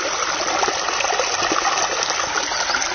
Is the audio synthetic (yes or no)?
no